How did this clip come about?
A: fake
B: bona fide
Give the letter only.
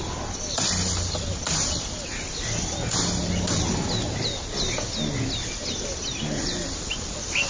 B